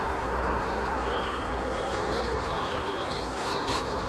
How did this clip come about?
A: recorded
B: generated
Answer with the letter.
B